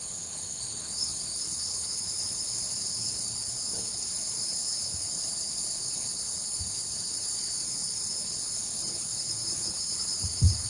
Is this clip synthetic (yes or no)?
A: yes